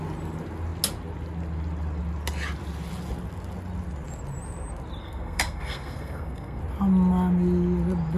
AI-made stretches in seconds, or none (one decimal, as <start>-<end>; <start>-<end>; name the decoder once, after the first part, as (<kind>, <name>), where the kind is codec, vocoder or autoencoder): 5.0-6.6 (codec, SNAC)